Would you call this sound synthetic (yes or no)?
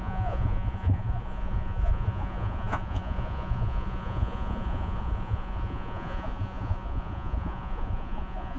yes